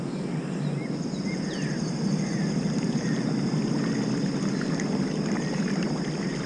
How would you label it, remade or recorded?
recorded